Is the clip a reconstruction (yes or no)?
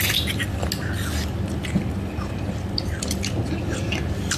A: no